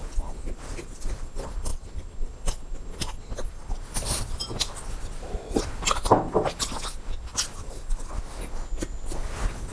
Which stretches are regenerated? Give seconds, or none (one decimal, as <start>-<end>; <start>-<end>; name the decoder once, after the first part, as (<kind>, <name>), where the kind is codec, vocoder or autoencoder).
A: none